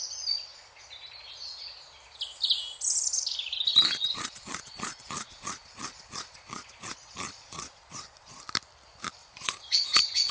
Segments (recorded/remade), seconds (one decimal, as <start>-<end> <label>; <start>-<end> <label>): 0.0-3.7 recorded; 3.7-8.4 remade; 8.4-9.2 recorded; 9.2-10.3 remade

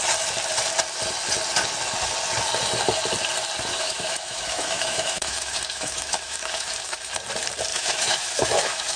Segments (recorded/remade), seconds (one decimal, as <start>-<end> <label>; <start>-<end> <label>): 0.0-3.7 recorded; 3.7-7.1 remade; 7.1-7.7 recorded; 7.7-9.0 remade

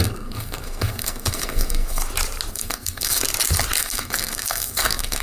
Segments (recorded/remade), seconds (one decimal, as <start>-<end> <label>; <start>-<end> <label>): 0.0-2.0 remade; 2.0-2.5 recorded; 2.5-3.2 remade; 3.2-3.8 recorded; 3.8-5.2 remade

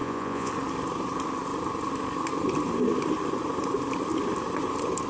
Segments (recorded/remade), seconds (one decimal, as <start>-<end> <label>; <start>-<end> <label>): 0.0-0.5 remade; 0.5-5.1 recorded